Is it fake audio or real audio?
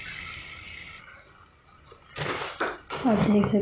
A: real